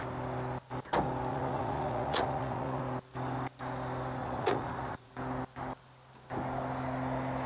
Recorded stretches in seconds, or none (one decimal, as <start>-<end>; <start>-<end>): 0.0-1.3; 2.8-4.2; 5.1-7.5